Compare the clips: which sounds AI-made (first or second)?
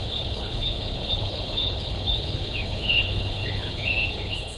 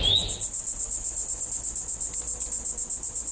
first